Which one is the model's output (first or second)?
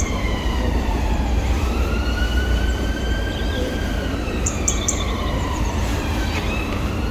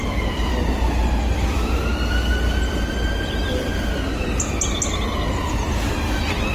first